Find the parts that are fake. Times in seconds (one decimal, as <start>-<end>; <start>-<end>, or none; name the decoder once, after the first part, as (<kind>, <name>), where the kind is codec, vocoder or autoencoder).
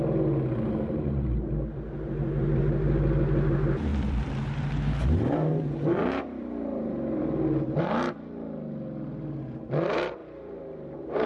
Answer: 3.9-7.8 (vocoder, BigVGAN v2); 10.2-11.3